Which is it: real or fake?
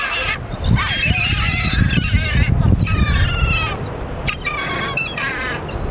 real